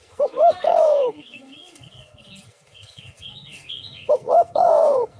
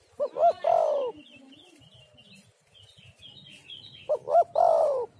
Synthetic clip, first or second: first